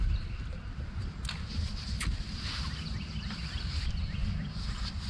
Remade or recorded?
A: recorded